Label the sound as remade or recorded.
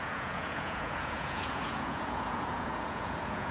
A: remade